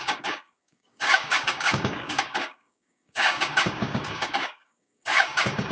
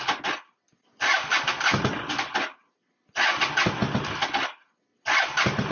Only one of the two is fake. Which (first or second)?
first